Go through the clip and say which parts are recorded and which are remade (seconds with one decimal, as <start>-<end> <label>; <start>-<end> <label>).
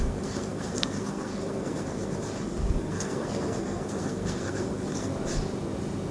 0.0-5.1 remade; 5.1-6.1 recorded